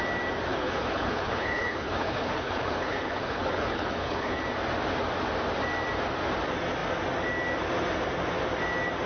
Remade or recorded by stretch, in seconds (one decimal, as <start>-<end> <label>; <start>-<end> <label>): 0.0-0.5 recorded; 0.5-4.4 remade; 4.4-9.1 recorded